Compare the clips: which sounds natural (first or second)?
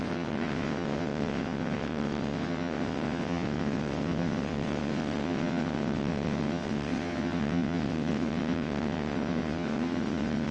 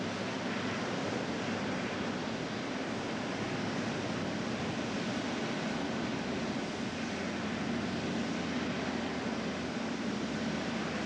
second